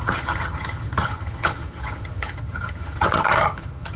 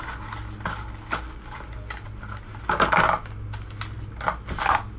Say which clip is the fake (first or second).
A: first